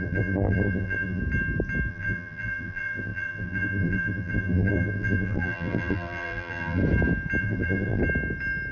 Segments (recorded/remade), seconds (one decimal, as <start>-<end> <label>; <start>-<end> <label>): 0.0-1.2 remade; 1.2-1.9 recorded; 1.9-6.8 remade; 6.8-7.4 recorded; 7.4-8.0 remade; 8.0-8.7 recorded